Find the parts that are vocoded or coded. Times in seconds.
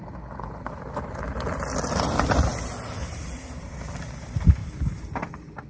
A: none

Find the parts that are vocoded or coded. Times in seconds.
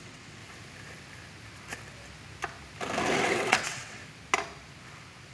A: 0.0-0.4; 3.2-4.0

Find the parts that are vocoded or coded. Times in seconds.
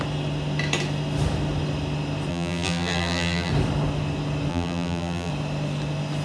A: 2.3-3.5; 4.5-5.3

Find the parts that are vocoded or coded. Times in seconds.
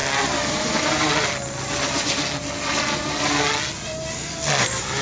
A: none